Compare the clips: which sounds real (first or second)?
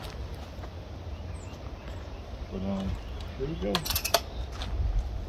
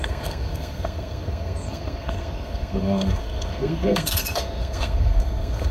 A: first